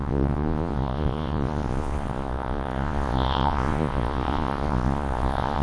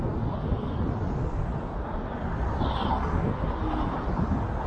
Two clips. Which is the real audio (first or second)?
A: second